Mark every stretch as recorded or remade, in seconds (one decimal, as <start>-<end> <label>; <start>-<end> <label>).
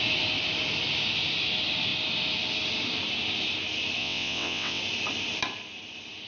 0.0-4.0 recorded; 4.0-4.8 remade; 4.8-6.3 recorded